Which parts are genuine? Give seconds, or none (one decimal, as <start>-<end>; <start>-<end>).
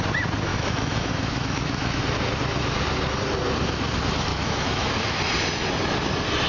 0.0-0.5; 2.0-4.3; 5.2-6.5